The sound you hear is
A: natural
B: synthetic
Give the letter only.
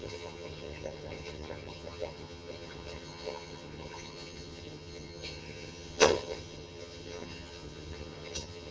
B